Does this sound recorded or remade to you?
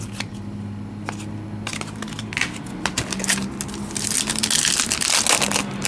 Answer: recorded